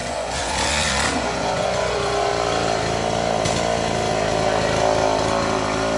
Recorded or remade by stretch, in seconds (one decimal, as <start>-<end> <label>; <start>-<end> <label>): 0.0-2.3 remade; 2.3-6.0 recorded